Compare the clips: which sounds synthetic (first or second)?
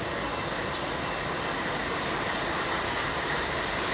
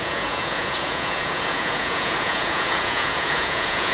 second